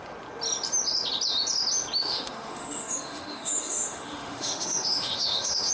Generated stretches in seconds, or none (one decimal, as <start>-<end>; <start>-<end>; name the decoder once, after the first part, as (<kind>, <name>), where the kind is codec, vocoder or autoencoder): 2.0-5.7 (autoencoder, DAC-VAE)